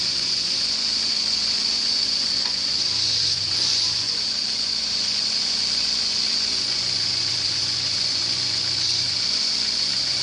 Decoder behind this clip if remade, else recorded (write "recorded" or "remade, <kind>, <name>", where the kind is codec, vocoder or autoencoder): remade, vocoder, Vocos